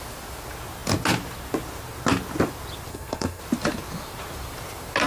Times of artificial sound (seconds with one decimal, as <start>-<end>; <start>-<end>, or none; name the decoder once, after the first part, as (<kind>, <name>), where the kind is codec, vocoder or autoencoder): 2.9-3.4 (codec, SNAC)